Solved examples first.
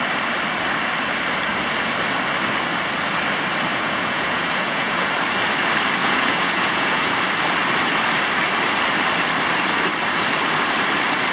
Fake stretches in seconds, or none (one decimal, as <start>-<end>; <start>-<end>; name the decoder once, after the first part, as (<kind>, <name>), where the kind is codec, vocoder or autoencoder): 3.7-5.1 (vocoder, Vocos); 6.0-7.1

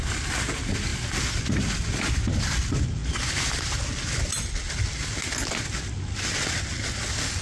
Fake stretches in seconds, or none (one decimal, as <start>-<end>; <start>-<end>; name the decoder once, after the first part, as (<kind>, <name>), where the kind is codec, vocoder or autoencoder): none

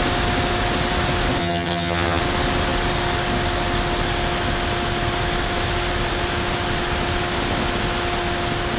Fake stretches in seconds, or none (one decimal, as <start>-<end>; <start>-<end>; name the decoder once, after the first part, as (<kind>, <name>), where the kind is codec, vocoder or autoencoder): 1.4-2.2 (vocoder, HiFi-GAN)

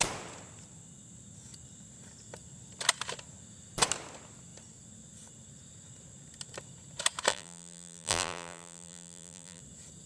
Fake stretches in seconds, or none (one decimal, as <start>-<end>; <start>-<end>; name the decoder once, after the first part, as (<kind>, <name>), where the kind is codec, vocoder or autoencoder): 7.3-9.6 (vocoder, BigVGAN v2)

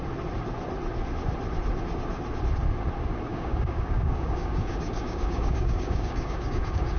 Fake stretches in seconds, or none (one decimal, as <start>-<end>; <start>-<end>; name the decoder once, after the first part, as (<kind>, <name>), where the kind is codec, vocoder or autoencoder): 3.3-7.0 (codec, DAC)

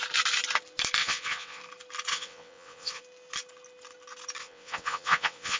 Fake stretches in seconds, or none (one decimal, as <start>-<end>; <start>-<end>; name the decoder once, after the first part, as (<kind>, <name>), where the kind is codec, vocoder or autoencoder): 1.0-1.6 (vocoder, WaveNeXt); 2.1-3.0; 4.4-5.6

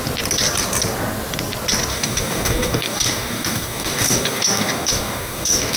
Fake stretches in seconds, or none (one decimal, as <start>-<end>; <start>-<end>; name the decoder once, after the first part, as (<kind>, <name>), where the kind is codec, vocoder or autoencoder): 1.9-5.8 (codec, DAC)

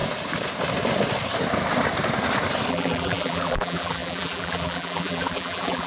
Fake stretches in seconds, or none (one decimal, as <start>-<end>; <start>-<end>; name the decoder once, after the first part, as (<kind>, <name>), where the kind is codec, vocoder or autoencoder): 2.7-5.9 (vocoder, BigVGAN v2)